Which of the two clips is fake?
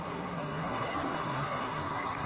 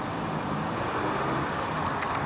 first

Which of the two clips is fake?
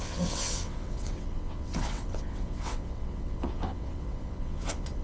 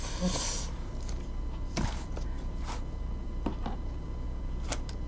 first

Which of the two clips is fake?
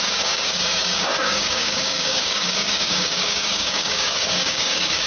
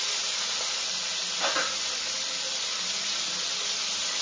first